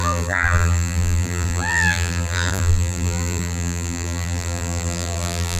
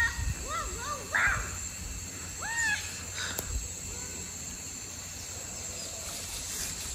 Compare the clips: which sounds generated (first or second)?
first